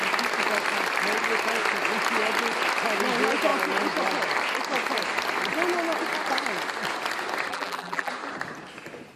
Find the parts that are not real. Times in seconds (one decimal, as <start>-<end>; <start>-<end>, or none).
7.5-8.1